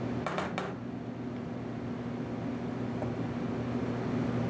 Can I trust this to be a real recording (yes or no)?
yes